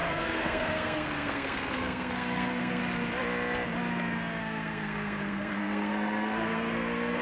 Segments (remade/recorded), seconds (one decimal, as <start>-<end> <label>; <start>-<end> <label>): 0.0-2.8 remade; 2.8-4.4 recorded; 4.4-7.2 remade

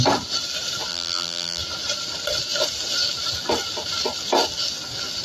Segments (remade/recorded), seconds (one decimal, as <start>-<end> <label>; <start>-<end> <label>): 0.0-0.9 recorded; 0.9-1.6 remade; 1.6-5.2 recorded

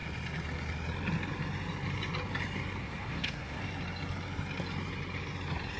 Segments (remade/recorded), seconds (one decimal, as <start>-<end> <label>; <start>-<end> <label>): 0.0-2.8 recorded; 2.8-3.6 remade; 3.6-5.8 recorded

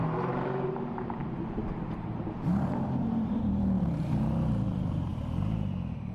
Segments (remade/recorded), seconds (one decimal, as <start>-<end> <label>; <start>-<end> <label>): 0.0-5.1 remade; 5.1-6.1 recorded

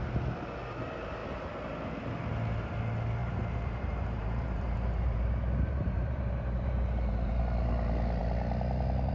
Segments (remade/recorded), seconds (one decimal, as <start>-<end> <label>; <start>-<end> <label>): 0.0-3.2 recorded; 3.2-7.4 remade; 7.4-9.1 recorded